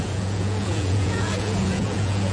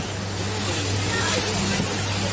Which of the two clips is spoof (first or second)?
first